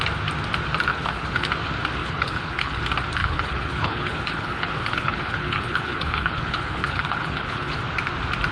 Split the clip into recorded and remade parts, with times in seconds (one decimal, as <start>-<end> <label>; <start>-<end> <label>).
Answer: 0.0-0.9 recorded; 0.9-1.5 remade; 1.5-2.0 recorded; 2.0-2.8 remade; 2.8-3.2 recorded; 3.2-7.8 remade; 7.8-8.5 recorded

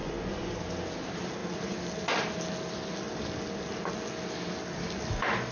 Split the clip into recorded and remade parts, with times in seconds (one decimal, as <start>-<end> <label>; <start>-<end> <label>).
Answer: 0.0-0.7 remade; 0.7-5.5 recorded